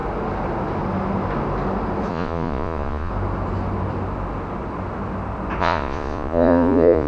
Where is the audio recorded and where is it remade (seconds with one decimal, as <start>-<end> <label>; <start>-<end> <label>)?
0.0-2.1 recorded; 2.1-3.1 remade; 3.1-5.6 recorded; 5.6-7.1 remade